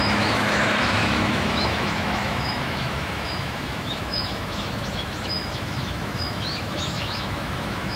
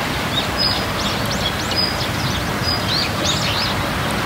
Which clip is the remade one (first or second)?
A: first